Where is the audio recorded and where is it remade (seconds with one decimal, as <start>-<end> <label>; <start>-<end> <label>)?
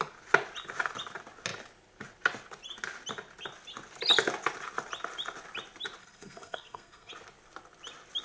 0.0-6.0 recorded; 6.0-7.1 remade; 7.1-8.2 recorded